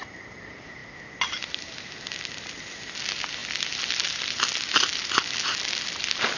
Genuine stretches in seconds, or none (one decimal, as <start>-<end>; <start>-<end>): 0.0-6.4